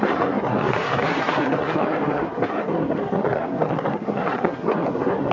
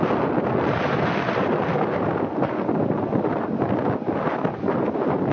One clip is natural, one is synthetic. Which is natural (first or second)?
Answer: second